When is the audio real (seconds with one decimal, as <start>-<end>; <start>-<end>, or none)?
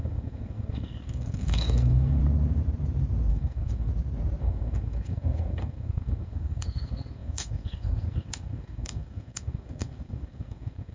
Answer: 2.2-3.3; 3.9-4.4